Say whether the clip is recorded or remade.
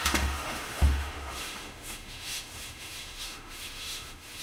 remade